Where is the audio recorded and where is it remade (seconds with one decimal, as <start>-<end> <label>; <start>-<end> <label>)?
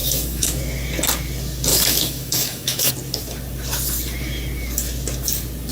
0.0-0.6 remade; 0.6-1.7 recorded; 1.7-2.9 remade; 2.9-5.7 recorded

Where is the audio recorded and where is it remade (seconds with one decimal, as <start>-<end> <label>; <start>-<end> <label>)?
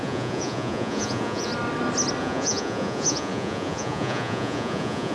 0.0-1.5 remade; 1.5-2.2 recorded; 2.2-5.1 remade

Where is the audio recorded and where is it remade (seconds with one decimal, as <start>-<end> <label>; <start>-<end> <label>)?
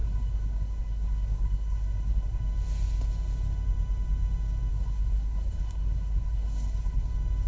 0.0-2.4 remade; 2.4-4.7 recorded; 4.7-7.1 remade; 7.1-7.5 recorded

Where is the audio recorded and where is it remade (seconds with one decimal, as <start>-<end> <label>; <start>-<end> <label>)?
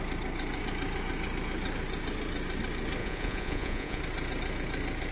0.0-3.0 recorded; 3.0-4.0 remade; 4.0-5.1 recorded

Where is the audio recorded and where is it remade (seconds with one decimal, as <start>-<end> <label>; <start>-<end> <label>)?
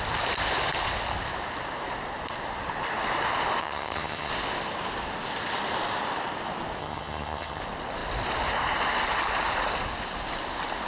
0.0-3.6 recorded; 3.6-4.3 remade; 4.3-6.8 recorded; 6.8-7.6 remade; 7.6-10.9 recorded